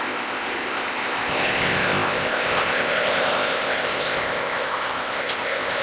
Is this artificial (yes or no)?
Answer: yes